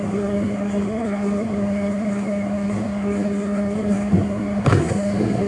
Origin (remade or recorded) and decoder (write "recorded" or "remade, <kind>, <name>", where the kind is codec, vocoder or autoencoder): remade, codec, SNAC